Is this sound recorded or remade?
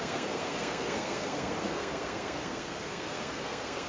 remade